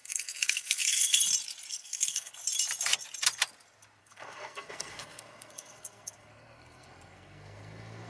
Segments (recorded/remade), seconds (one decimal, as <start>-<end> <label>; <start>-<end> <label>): 0.0-1.2 remade; 1.2-1.7 recorded; 1.7-2.3 remade; 2.3-4.0 recorded; 4.0-8.1 remade